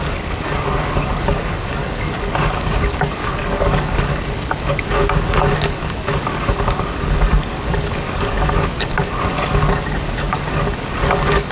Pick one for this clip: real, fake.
fake